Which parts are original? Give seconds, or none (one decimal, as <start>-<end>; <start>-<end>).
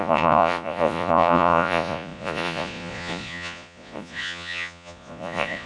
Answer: none